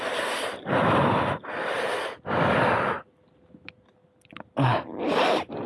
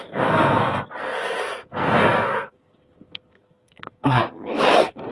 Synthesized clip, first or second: second